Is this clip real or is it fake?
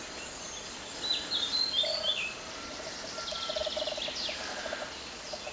real